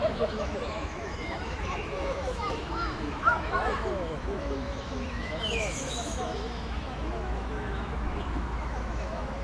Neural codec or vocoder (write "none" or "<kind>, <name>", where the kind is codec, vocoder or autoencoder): autoencoder, DAC-VAE